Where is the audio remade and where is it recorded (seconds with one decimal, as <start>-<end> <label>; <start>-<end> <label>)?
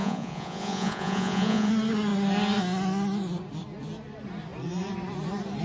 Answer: 0.0-1.7 remade; 1.7-5.6 recorded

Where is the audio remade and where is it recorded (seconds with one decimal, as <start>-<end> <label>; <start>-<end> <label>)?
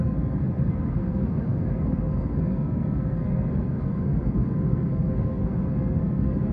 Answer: 0.0-6.5 remade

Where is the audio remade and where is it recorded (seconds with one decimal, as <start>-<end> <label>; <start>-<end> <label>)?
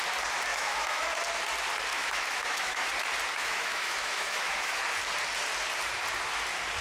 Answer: 0.0-0.5 recorded; 0.5-1.1 remade; 1.1-1.9 recorded; 1.9-2.9 remade; 2.9-3.4 recorded; 3.4-4.8 remade; 4.8-6.8 recorded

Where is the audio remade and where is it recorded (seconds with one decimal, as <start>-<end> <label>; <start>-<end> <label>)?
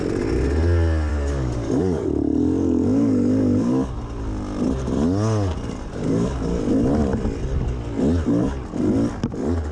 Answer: 0.0-1.1 recorded; 1.1-3.9 remade; 3.9-6.0 recorded; 6.0-6.6 remade; 6.6-9.7 recorded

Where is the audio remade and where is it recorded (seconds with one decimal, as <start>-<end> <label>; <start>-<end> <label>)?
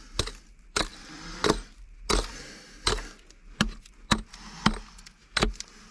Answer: 0.0-5.2 recorded; 5.2-5.9 remade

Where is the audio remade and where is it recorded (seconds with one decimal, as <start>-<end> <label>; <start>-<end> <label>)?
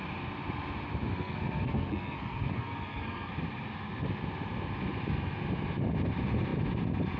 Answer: 0.0-1.1 recorded; 1.1-3.3 remade; 3.3-7.2 recorded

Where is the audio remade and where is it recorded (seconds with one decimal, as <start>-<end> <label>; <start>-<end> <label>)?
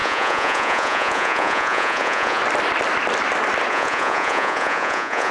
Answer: 0.0-2.4 remade; 2.4-3.7 recorded; 3.7-5.3 remade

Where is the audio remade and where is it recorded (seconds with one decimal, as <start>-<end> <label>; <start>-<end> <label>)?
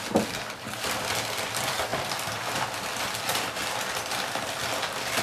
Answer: 0.0-5.2 recorded